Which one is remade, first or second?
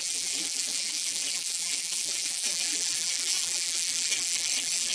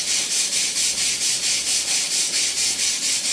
first